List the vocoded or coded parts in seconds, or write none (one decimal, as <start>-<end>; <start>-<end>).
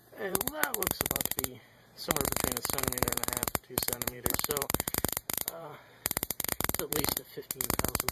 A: 0.0-2.1; 2.8-7.4